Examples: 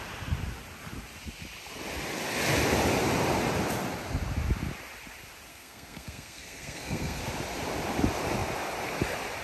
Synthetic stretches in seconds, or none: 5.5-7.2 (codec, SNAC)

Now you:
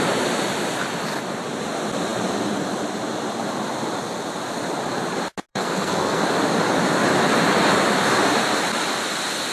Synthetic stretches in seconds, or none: 5.5-6.3 (codec, SNAC)

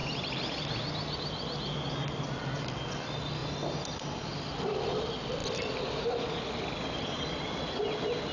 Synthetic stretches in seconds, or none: none